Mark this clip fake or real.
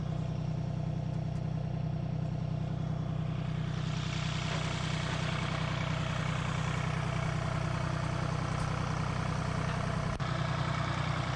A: real